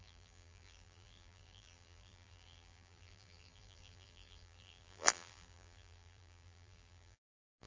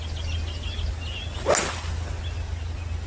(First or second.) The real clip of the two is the second